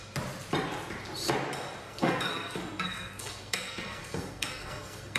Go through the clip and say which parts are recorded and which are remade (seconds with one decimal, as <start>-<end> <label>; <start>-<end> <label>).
0.0-1.8 recorded; 1.8-5.2 remade